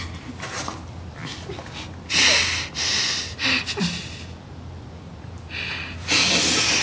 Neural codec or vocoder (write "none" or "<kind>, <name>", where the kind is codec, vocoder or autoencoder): none